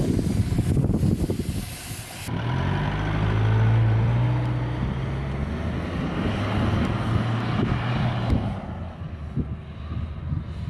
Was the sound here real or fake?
real